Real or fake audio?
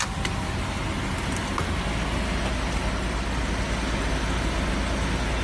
real